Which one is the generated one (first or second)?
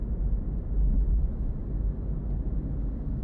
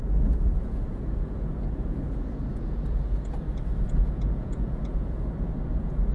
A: second